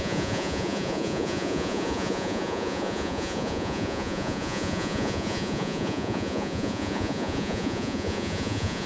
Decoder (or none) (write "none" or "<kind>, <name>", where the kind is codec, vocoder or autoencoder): vocoder, Vocos